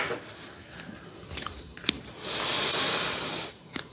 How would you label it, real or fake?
real